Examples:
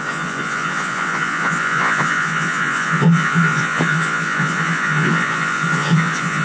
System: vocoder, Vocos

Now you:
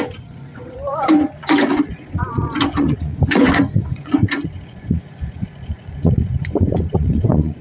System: vocoder, Vocos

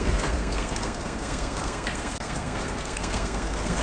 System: codec, SNAC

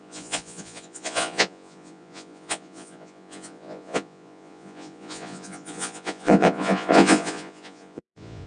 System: vocoder, Vocos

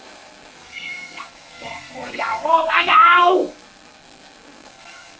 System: codec, SNAC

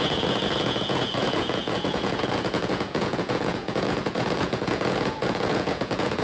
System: vocoder, Vocos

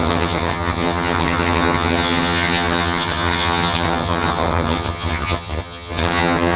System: vocoder, HiFi-GAN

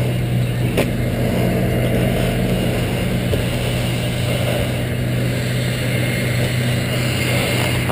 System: none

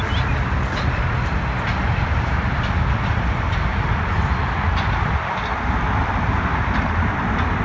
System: none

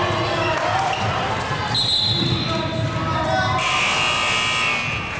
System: none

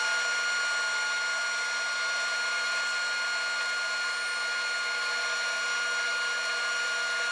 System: none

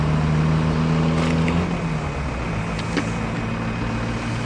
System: none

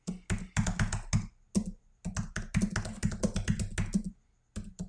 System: none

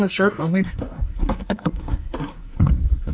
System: codec, SNAC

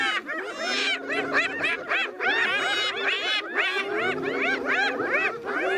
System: none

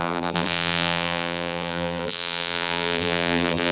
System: vocoder, BigVGAN v2